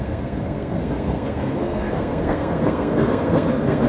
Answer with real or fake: fake